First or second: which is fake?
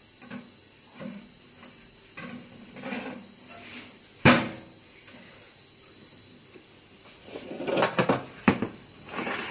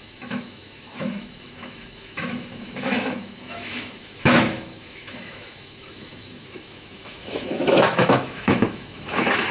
second